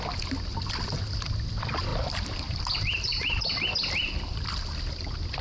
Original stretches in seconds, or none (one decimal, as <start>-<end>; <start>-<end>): 0.0-0.5; 1.3-1.9; 3.7-5.4